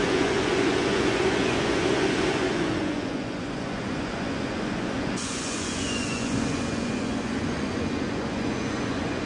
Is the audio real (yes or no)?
no